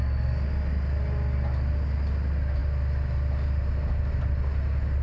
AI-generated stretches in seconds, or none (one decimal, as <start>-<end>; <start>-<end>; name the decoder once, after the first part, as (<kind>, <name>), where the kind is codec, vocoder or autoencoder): none

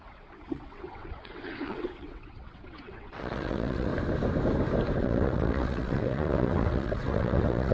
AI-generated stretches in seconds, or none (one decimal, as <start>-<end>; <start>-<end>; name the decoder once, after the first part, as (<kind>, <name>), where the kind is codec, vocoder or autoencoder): 0.0-3.9 (vocoder, WaveNeXt); 5.0-7.7

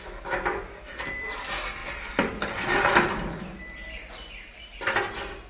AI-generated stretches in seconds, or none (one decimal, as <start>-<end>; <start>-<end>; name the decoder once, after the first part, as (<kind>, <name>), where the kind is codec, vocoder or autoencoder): none

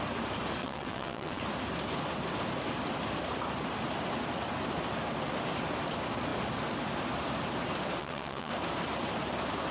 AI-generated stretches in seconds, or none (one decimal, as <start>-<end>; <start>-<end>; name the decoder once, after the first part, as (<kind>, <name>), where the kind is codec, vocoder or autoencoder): 0.6-1.4 (vocoder, WaveNeXt); 8.0-8.5